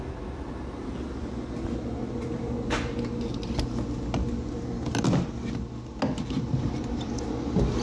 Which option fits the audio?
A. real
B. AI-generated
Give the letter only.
A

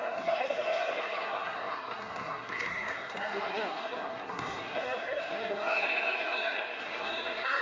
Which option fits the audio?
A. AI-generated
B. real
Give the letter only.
A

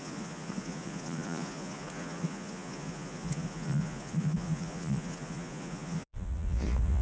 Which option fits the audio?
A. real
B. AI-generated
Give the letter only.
B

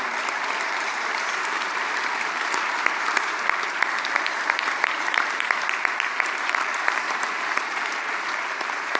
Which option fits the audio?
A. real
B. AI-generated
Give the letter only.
B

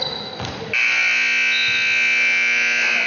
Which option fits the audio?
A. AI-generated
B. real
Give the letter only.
B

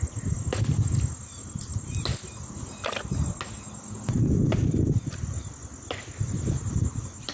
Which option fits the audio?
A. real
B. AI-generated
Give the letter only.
A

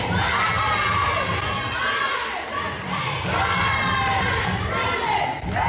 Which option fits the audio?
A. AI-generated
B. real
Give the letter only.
B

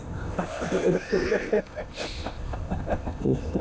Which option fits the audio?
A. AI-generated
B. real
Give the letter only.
A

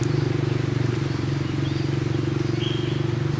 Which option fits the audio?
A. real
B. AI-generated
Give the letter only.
A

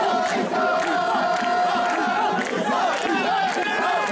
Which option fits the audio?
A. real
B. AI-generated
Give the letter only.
A